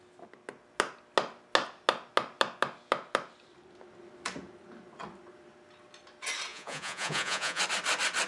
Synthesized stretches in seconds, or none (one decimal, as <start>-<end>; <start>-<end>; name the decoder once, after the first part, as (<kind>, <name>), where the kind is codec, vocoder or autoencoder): 6.5-7.6 (vocoder, Vocos)